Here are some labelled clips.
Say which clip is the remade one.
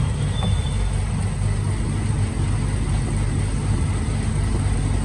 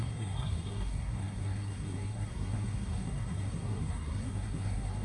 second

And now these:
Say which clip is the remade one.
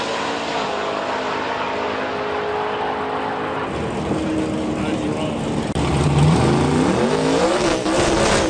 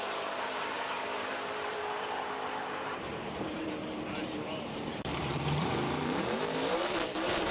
second